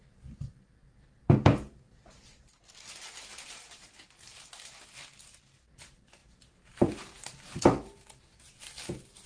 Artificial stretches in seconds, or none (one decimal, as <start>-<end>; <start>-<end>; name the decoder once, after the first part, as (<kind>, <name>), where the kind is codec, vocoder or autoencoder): 0.8-4.8 (vocoder, BigVGAN v2); 6.2-8.4